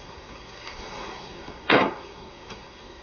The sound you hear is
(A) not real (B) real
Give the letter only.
A